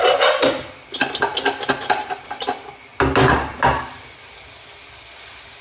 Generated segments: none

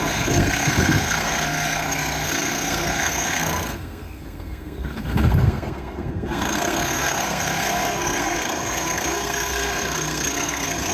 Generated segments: 0.0-10.9 (codec, SNAC)

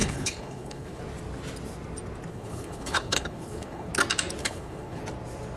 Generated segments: 0.0-1.0 (codec, HILCodec); 2.3-3.9; 4.4-5.0